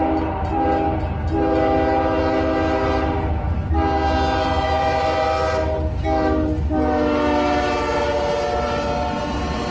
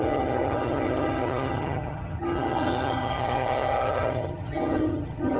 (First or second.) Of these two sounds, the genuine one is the first